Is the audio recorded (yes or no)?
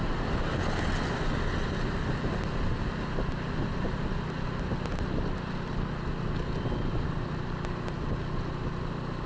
yes